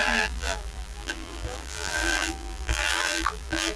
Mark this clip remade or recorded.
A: remade